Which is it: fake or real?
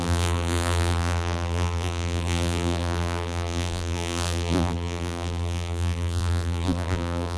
fake